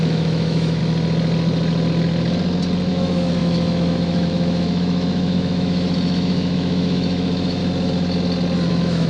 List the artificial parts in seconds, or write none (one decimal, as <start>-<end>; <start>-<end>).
0.0-0.8; 2.9-7.6; 8.7-9.1